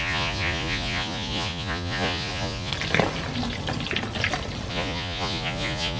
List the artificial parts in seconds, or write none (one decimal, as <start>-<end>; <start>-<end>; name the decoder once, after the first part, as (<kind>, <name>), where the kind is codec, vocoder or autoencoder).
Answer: 0.0-2.7 (vocoder, Vocos); 4.7-6.0